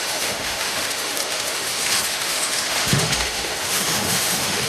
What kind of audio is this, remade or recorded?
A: remade